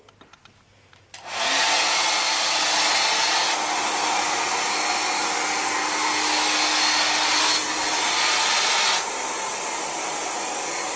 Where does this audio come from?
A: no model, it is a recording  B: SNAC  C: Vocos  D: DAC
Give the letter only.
A